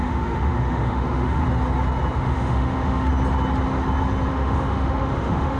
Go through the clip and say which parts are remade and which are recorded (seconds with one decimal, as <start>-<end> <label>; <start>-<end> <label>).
0.0-1.4 remade; 1.4-2.2 recorded; 2.2-3.1 remade; 3.1-4.3 recorded; 4.3-5.6 remade